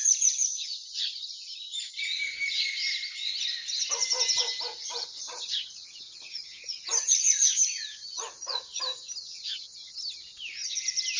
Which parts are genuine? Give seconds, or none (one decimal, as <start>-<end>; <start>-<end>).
0.0-0.5; 1.3-4.8; 8.8-11.2